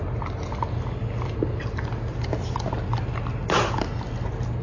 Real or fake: real